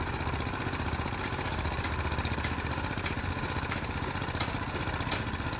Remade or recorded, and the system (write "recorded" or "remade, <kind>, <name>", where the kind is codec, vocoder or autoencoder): recorded